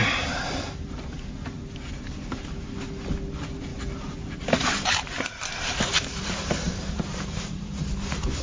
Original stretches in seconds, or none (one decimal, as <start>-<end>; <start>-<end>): 0.7-3.7; 7.8-8.4

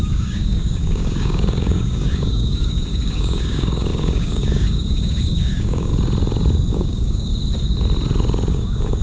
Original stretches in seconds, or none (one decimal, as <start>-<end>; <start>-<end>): 5.9-6.7; 7.3-8.5

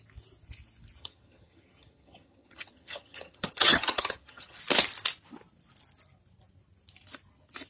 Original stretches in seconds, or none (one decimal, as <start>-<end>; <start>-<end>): 0.0-1.0; 4.6-7.7